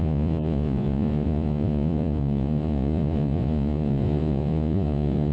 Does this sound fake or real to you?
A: fake